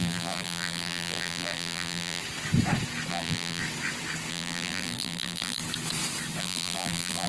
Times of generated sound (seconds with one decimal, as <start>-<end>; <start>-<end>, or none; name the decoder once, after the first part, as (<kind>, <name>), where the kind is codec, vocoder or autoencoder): 0.0-2.2 (vocoder, BigVGAN v2); 3.1-3.6; 4.3-5.6; 6.4-7.3